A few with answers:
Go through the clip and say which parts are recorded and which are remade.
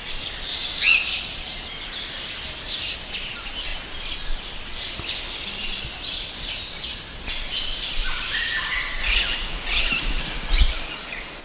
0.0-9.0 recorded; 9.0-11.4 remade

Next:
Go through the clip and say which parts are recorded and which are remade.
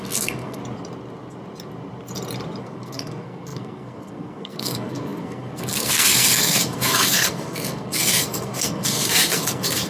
0.0-0.6 remade; 0.6-2.6 recorded; 2.6-9.9 remade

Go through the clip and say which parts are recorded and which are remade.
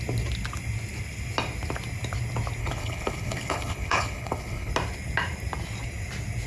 0.0-2.6 recorded; 2.6-4.7 remade; 4.7-6.5 recorded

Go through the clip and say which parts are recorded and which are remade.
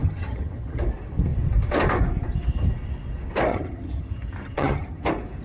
0.0-0.8 remade; 0.8-3.5 recorded; 3.5-5.0 remade; 5.0-5.4 recorded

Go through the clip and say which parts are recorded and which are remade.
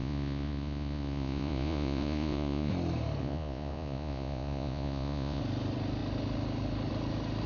0.0-2.7 remade; 2.7-3.2 recorded; 3.2-5.4 remade; 5.4-7.5 recorded